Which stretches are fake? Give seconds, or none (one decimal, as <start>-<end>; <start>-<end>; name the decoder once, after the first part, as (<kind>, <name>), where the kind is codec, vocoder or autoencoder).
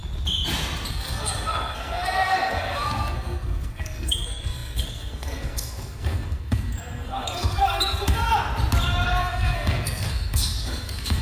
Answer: 0.9-8.3 (codec, SNAC); 9.2-11.2